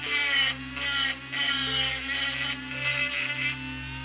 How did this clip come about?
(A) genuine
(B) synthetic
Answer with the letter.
A